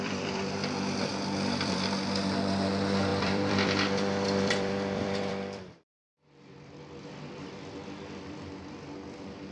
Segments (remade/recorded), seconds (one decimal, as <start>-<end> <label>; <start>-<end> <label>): 0.0-9.5 remade